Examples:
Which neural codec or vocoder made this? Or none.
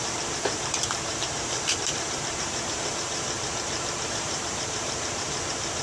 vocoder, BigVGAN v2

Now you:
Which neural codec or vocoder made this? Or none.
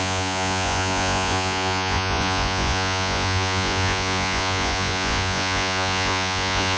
vocoder, Vocos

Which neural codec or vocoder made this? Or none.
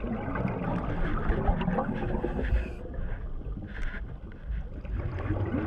none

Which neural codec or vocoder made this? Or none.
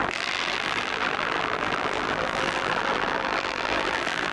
vocoder, BigVGAN v2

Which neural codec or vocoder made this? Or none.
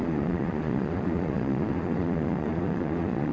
vocoder, Vocos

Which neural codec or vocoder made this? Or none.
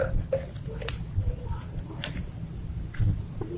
none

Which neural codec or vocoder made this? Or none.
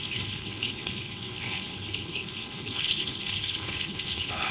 codec, HILCodec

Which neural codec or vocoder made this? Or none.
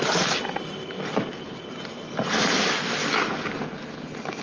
none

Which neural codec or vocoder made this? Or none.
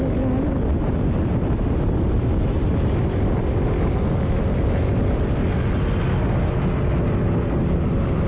none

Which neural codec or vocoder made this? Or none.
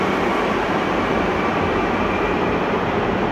none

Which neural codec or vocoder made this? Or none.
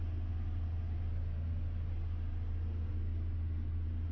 none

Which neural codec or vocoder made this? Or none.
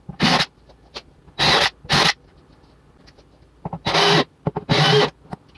none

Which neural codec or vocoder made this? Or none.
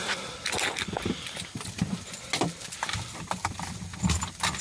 none